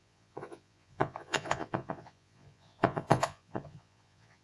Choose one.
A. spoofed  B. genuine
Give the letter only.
A